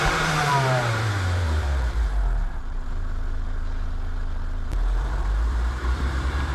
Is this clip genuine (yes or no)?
no